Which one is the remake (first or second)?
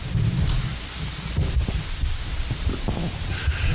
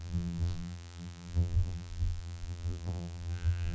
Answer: second